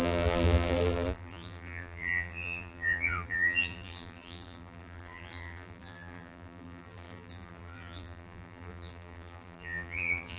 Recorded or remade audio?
remade